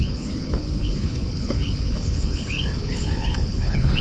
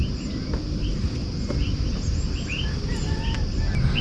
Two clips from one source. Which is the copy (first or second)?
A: first